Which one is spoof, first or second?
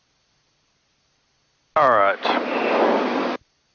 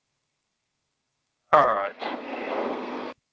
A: second